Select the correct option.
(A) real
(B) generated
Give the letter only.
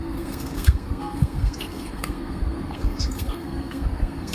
B